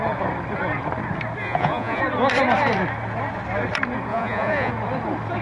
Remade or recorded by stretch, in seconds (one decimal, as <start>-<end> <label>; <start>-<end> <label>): 0.0-1.4 recorded; 1.4-2.0 remade; 2.0-4.1 recorded; 4.1-4.7 remade; 4.7-5.4 recorded